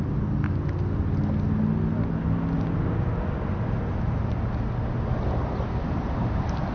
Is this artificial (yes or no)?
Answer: no